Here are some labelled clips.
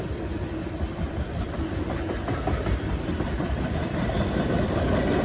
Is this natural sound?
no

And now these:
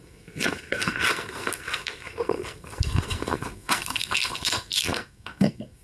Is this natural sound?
no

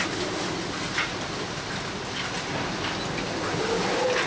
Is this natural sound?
yes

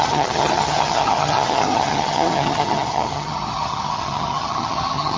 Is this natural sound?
no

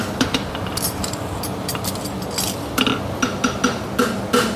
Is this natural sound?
yes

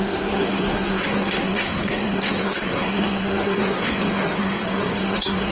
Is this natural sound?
no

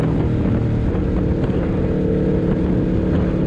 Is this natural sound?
yes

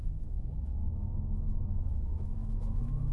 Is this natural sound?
no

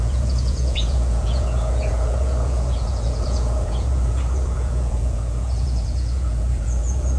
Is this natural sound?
no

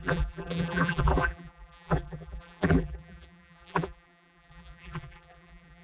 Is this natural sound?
no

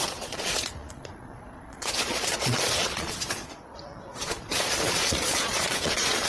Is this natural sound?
no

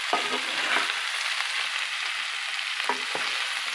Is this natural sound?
yes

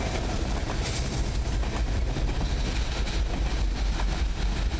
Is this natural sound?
yes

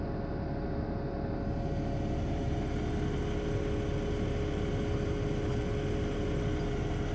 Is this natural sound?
yes